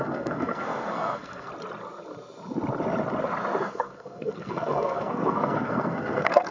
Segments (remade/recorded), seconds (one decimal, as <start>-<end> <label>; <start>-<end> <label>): 0.0-1.5 remade; 1.5-3.6 recorded; 3.6-6.5 remade